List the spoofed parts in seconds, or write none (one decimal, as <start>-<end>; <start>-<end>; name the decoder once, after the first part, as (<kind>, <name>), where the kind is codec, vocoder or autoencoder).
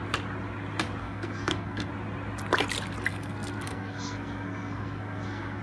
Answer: 1.0-1.9 (codec, SNAC); 3.1-5.6